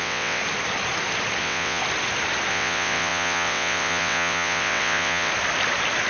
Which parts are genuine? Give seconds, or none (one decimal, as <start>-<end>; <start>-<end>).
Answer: 0.4-1.4; 1.8-2.5; 5.3-6.1